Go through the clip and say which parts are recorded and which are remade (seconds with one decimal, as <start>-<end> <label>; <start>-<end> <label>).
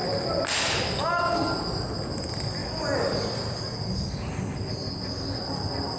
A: 0.0-6.0 recorded